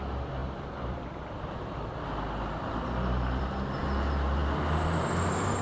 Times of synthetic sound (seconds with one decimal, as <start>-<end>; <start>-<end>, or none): 0.4-3.5